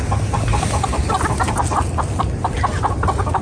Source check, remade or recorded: recorded